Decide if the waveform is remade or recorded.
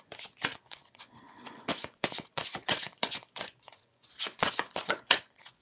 remade